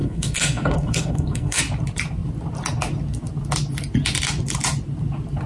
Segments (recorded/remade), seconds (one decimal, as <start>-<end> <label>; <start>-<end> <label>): 0.0-1.6 remade; 1.6-5.5 recorded